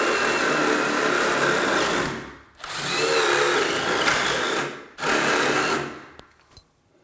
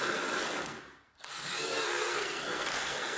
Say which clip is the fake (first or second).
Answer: second